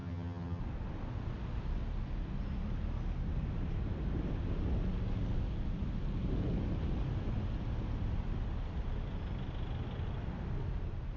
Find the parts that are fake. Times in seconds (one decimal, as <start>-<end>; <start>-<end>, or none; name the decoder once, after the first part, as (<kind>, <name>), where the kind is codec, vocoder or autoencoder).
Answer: 0.0-0.6 (vocoder, HiFi-GAN)